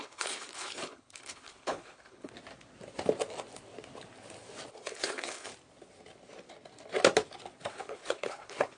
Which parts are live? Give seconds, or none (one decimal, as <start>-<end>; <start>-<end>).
2.3-4.7; 5.5-7.7